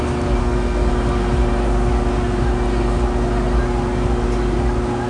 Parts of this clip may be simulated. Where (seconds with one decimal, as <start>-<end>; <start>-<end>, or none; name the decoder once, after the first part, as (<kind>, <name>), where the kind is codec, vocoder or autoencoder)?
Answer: 0.4-0.9 (codec, SNAC)